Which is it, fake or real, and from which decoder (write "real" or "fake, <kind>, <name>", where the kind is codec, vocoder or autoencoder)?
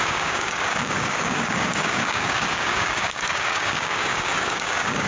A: fake, codec, DAC